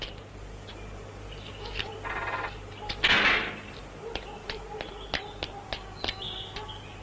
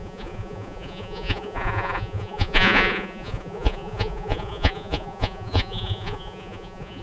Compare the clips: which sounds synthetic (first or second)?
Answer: second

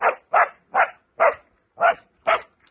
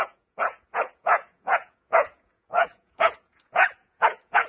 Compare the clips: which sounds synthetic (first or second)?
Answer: second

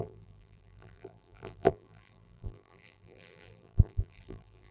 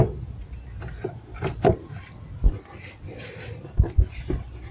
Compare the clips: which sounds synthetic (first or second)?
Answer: first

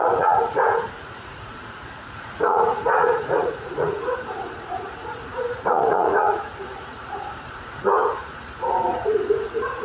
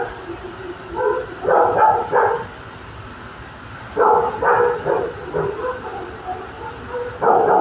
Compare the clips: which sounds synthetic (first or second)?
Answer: first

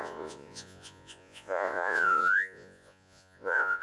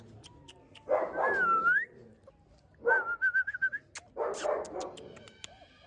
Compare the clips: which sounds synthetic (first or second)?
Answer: first